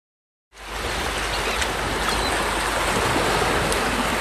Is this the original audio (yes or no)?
yes